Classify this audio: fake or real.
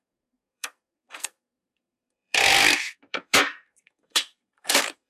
fake